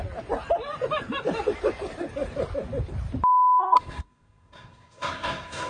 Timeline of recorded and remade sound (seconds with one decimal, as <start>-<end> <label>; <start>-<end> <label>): 0.0-3.6 recorded; 3.6-5.7 remade